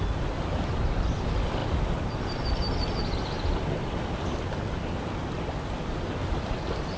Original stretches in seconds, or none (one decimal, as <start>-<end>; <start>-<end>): 0.0-7.0